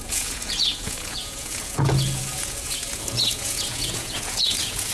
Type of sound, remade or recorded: remade